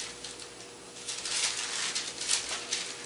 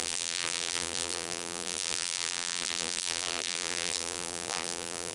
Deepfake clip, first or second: second